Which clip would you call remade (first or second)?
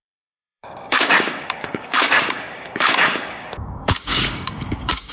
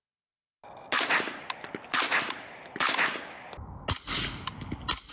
first